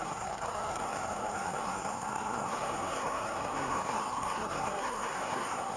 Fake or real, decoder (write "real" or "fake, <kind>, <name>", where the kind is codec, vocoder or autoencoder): fake, codec, SNAC